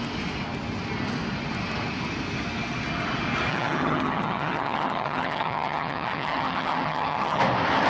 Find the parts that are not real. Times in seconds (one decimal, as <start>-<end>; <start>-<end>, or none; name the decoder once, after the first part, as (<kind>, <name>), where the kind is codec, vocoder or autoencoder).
3.5-7.4 (vocoder, HiFi-GAN)